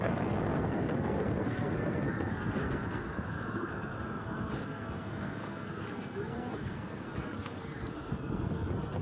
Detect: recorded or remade remade